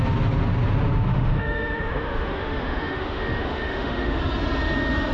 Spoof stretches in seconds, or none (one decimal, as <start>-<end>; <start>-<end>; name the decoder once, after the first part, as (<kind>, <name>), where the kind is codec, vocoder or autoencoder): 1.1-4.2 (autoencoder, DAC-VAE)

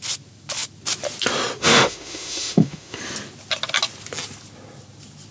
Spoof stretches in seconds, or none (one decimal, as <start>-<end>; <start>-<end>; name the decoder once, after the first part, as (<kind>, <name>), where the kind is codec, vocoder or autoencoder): 1.6-3.0 (autoencoder, DAC-VAE)

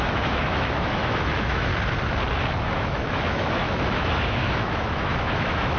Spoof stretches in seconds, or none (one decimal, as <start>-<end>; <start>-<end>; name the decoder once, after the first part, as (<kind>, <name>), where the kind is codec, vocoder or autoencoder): 0.0-1.7 (autoencoder, DAC-VAE); 2.6-5.8

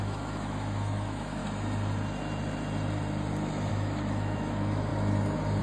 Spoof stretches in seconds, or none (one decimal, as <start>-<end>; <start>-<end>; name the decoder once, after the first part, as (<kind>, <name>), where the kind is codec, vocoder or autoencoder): 0.0-1.4 (autoencoder, DAC-VAE); 3.7-4.9

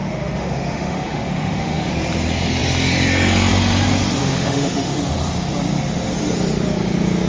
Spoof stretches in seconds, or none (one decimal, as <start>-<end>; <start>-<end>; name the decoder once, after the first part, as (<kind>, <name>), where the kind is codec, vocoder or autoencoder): 0.0-1.9 (autoencoder, DAC-VAE); 4.2-5.0

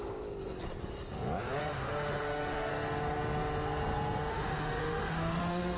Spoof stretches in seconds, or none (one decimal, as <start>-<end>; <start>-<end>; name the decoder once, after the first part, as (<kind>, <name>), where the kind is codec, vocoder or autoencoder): 1.6-2.7 (autoencoder, DAC-VAE); 4.3-5.8

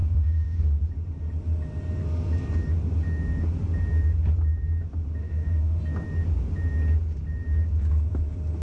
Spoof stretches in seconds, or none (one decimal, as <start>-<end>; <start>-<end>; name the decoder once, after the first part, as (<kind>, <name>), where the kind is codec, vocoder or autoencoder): 0.0-0.6 (autoencoder, DAC-VAE); 5.2-5.8

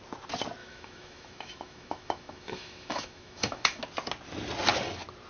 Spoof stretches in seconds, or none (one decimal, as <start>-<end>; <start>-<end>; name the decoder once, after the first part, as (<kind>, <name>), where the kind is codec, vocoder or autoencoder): 0.6-3.8 (autoencoder, DAC-VAE)